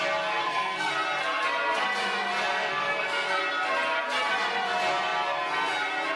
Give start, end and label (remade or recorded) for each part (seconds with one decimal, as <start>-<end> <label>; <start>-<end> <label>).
0.0-0.4 recorded; 0.4-0.9 remade; 0.9-2.5 recorded; 2.5-3.4 remade; 3.4-6.2 recorded